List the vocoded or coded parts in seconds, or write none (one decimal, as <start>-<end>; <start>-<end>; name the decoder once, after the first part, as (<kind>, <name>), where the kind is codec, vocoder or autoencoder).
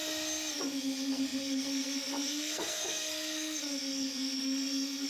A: 0.5-5.1 (codec, SNAC)